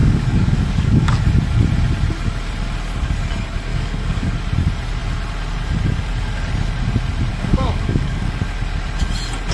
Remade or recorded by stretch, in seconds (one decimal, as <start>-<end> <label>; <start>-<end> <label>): 0.0-1.2 remade; 1.2-3.7 recorded; 3.7-4.3 remade; 4.3-7.3 recorded; 7.3-8.4 remade; 8.4-9.5 recorded